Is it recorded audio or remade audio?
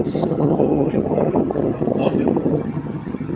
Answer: remade